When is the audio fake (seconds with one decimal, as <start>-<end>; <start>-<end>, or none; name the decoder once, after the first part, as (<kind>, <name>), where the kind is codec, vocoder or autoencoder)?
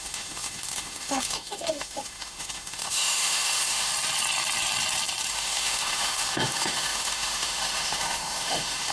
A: 0.0-3.9 (autoencoder, DAC-VAE); 5.3-8.9